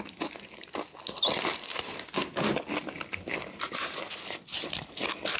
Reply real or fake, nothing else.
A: real